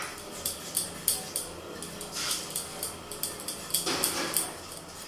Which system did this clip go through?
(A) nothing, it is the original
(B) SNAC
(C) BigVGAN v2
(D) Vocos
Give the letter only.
A